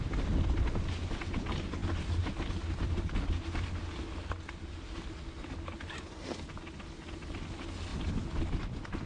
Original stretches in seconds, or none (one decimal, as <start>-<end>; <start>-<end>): 0.0-9.1